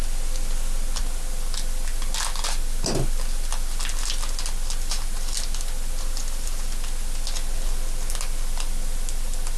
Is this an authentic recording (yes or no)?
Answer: yes